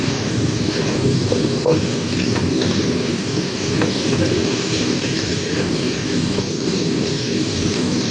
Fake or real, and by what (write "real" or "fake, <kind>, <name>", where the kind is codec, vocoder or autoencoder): fake, codec, DAC